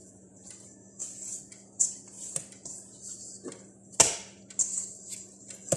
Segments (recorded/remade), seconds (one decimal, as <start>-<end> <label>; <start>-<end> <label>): 0.0-0.5 remade; 0.5-5.8 recorded